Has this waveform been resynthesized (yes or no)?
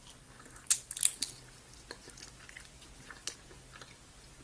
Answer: no